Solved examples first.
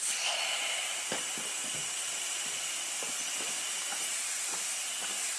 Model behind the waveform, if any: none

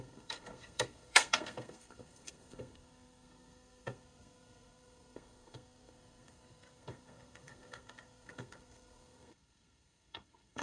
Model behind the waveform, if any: codec, SNAC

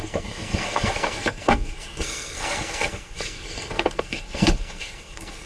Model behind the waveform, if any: codec, SNAC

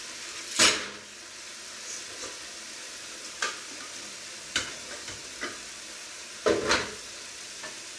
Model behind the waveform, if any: none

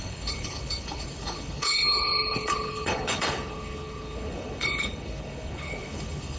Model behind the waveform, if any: codec, HILCodec